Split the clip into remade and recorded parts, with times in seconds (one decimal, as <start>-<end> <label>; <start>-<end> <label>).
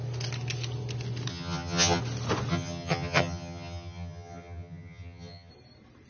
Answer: 0.0-1.3 recorded; 1.3-2.0 remade; 2.0-2.5 recorded; 2.5-5.5 remade; 5.5-6.1 recorded